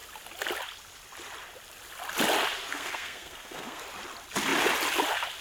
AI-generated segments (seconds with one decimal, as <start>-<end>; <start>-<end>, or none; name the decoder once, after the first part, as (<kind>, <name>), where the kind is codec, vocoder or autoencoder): 2.7-3.8 (codec, SNAC)